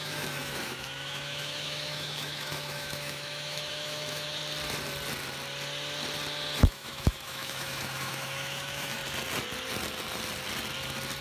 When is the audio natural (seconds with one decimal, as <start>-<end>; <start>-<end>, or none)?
4.4-6.6; 9.0-11.2